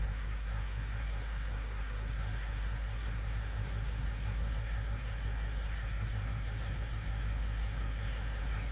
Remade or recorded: remade